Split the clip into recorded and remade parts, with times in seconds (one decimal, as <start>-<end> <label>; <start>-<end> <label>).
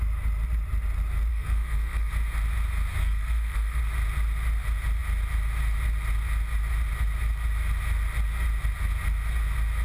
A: 0.0-1.3 recorded; 1.3-2.1 remade; 2.1-3.0 recorded; 3.0-3.8 remade; 3.8-9.8 recorded